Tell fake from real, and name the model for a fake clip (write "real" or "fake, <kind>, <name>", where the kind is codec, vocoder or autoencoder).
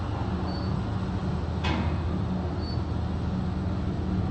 real